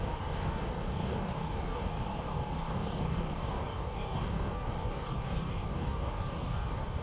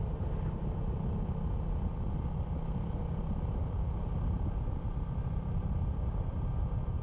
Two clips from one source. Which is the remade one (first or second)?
first